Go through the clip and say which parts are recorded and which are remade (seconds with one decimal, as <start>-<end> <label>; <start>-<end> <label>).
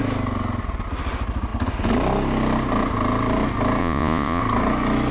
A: 0.0-3.8 recorded; 3.8-4.4 remade; 4.4-5.1 recorded